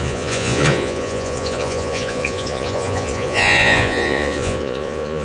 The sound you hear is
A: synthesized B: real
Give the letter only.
A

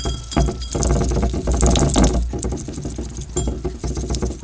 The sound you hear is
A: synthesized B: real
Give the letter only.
B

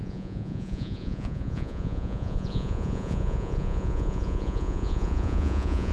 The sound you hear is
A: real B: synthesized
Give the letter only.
B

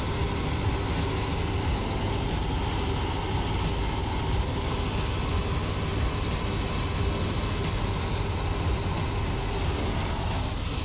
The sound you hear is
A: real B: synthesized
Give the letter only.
A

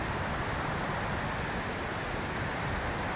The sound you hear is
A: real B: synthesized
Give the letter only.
A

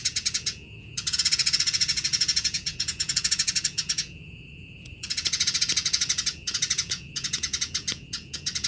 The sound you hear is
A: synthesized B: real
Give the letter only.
A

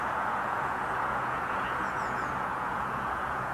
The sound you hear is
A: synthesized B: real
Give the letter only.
A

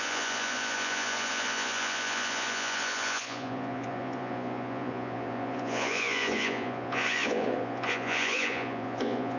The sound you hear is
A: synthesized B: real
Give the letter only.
A